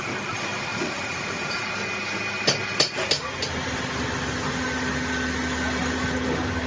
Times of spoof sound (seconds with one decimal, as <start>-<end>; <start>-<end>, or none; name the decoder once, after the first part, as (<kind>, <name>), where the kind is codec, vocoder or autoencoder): 0.7-1.7 (vocoder, Vocos)